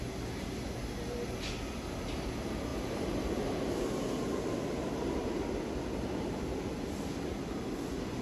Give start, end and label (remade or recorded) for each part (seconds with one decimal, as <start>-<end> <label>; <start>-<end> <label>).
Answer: 0.0-2.7 recorded; 2.7-3.8 remade; 3.8-8.2 recorded